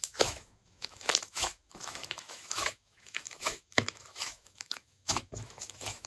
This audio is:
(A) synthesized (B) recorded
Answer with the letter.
A